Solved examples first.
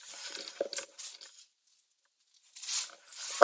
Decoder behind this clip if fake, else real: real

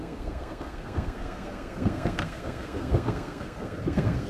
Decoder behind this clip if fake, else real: fake, codec, SNAC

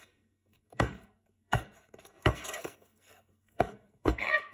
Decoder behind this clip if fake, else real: fake, codec, SNAC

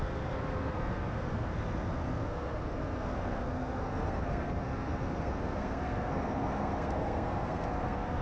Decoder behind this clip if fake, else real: fake, codec, SNAC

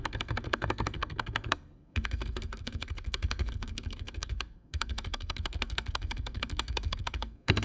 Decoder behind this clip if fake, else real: fake, codec, SNAC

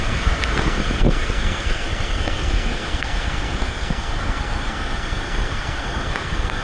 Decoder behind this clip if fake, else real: fake, codec, SNAC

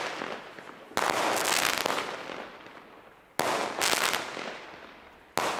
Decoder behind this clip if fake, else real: real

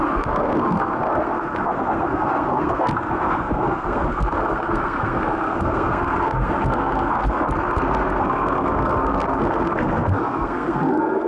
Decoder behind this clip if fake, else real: fake, codec, SNAC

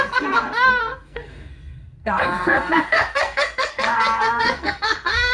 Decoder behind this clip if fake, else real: fake, codec, SNAC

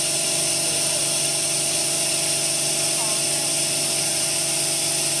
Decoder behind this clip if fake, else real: real